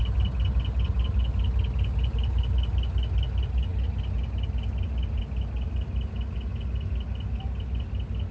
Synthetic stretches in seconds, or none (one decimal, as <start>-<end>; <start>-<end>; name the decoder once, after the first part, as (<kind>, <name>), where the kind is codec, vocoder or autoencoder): none